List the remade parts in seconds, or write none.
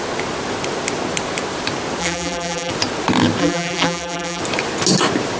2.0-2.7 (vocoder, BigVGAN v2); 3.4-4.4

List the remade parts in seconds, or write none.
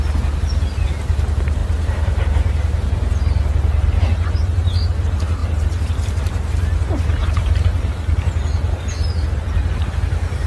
1.6-3.2 (vocoder, BigVGAN v2); 5.4-7.9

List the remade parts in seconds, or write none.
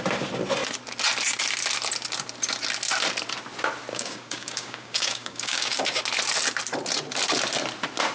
3.9-6.0 (codec, DAC)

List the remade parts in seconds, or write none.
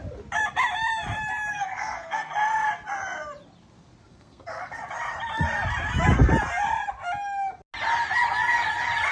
1.5-2.3 (codec, SNAC); 4.1-4.8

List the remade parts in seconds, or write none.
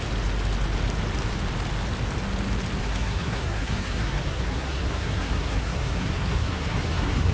2.8-7.3 (codec, SNAC)